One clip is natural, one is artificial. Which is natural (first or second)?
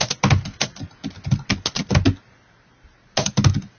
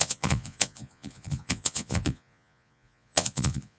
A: first